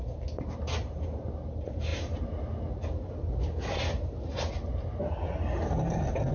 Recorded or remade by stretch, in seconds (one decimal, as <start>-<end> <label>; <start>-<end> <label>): 0.0-6.3 recorded